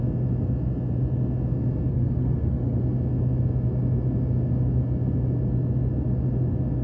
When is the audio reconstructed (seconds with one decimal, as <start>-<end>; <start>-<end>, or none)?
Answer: 1.9-2.8